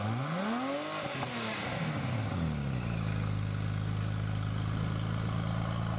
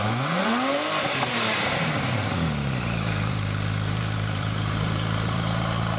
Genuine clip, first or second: first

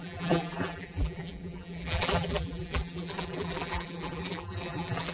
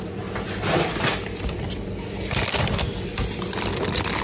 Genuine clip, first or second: second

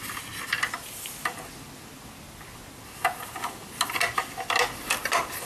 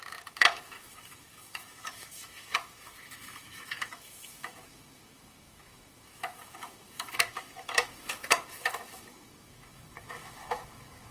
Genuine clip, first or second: first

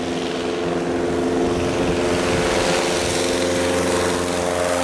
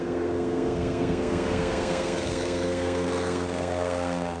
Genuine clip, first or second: first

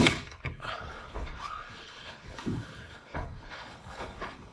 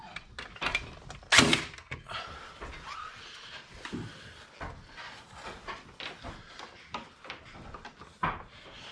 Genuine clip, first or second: second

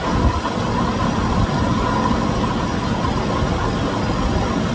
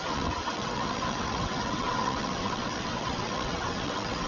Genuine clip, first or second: first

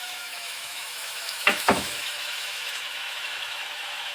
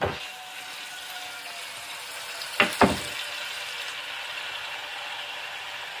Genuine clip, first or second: second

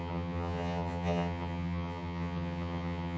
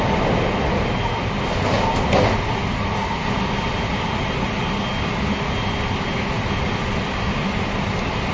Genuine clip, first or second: second